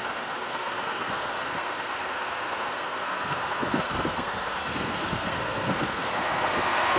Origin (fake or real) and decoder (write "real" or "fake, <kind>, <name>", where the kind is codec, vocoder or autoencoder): fake, codec, SNAC